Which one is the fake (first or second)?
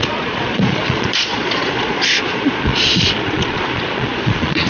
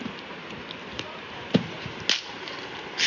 first